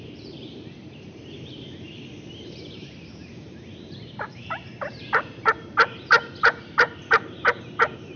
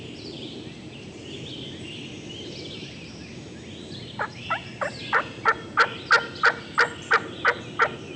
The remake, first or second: first